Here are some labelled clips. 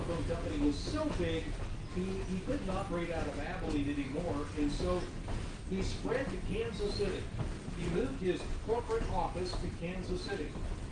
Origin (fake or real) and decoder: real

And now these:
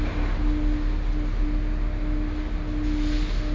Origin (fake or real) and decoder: real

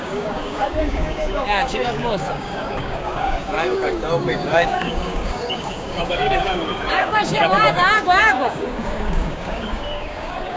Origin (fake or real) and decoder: fake, codec, DAC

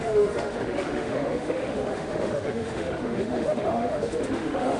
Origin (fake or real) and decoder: fake, autoencoder, DAC-VAE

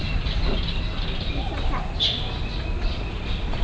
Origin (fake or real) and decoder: real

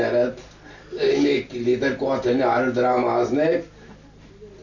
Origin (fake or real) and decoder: real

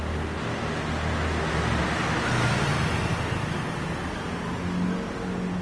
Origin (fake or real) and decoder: real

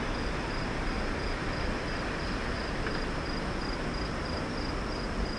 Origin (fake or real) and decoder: real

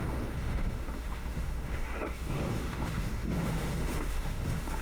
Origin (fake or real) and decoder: fake, autoencoder, DAC-VAE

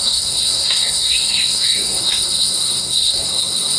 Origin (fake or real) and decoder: fake, codec, SNAC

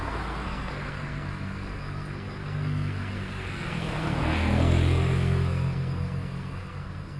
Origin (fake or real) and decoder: fake, codec, SNAC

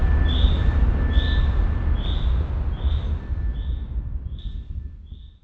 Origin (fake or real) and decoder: real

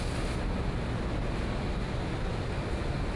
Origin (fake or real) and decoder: real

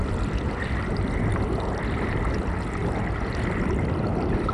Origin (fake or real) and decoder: real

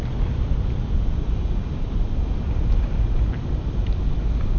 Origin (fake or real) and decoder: real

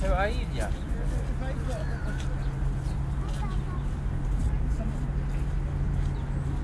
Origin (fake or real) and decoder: real